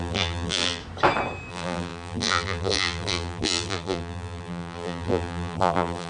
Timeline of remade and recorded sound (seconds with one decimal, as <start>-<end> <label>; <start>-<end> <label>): 0.0-0.8 remade; 0.8-1.5 recorded; 1.5-6.1 remade